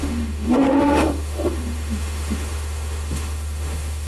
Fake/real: fake